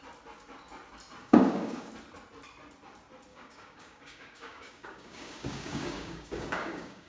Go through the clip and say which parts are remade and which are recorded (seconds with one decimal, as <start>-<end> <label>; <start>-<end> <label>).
0.0-1.2 recorded; 1.2-1.9 remade; 1.9-3.3 recorded; 3.3-7.1 remade